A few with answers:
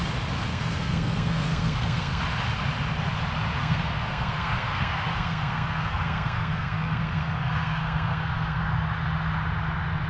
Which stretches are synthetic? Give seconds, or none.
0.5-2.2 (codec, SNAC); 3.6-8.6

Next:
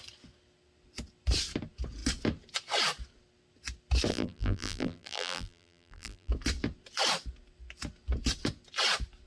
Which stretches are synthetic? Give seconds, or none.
4.1-6.3 (vocoder, BigVGAN v2)

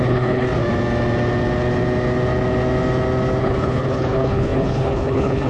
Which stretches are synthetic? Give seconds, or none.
0.0-0.5 (codec, HILCodec); 3.4-5.5

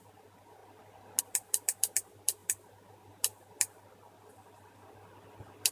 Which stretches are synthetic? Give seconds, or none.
0.0-0.6 (vocoder, BigVGAN v2); 1.2-5.7

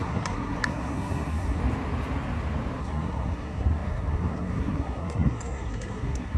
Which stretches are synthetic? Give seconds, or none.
0.0-1.6 (codec, SNAC); 2.8-6.4

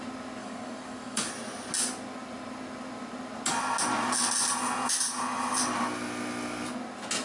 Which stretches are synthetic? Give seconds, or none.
0.4-1.3 (codec, DAC)

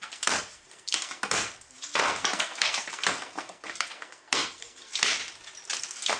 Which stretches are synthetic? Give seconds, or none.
0.0-5.2 (codec, SNAC); 5.8-6.2